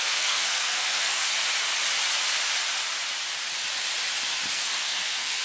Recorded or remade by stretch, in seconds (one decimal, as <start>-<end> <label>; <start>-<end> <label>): 0.0-1.3 remade; 1.3-4.5 recorded; 4.5-5.4 remade